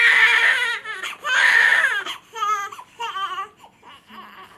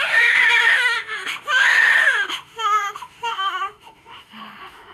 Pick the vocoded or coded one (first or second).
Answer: second